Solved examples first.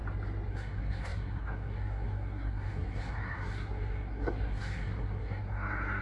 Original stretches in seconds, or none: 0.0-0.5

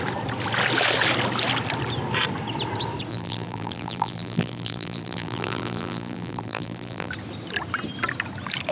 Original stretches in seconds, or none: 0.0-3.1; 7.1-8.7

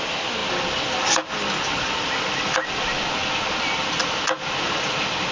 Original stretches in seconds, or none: 0.0-5.3